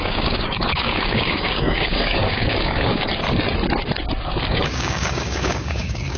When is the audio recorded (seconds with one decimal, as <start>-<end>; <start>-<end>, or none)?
3.1-4.5